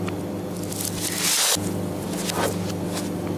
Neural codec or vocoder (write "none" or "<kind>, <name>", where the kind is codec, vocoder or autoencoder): none